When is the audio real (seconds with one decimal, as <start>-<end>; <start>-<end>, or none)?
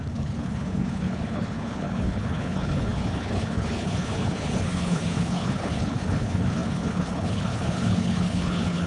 none